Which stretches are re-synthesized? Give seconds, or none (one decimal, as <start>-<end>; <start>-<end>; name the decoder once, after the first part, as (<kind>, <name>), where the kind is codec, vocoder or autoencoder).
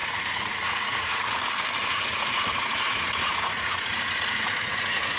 0.0-1.2 (vocoder, Vocos); 1.8-5.2